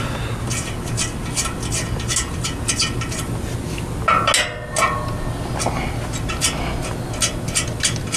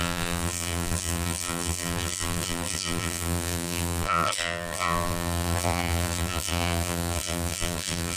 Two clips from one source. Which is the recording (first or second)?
first